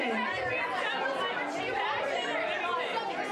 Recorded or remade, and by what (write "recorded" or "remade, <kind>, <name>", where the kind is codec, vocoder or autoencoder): recorded